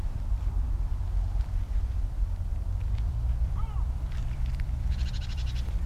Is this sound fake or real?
fake